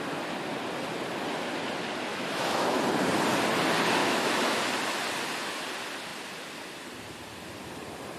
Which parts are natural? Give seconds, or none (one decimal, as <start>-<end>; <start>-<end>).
0.0-2.1; 2.8-4.0; 4.6-8.2